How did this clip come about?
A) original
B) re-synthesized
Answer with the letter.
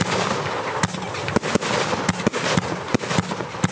A